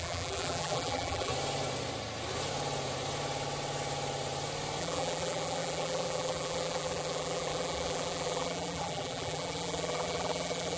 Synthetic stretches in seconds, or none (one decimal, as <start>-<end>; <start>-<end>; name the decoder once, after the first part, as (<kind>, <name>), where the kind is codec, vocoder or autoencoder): 0.0-1.3 (vocoder, BigVGAN v2); 4.8-10.8